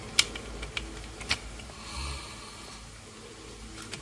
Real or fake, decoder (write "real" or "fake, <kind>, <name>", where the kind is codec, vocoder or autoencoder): real